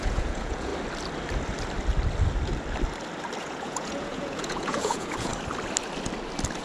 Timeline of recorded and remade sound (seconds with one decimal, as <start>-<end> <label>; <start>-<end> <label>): 0.0-0.7 remade; 0.7-3.4 recorded; 3.4-5.3 remade; 5.3-6.6 recorded